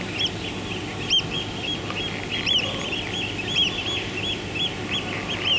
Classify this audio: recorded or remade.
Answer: recorded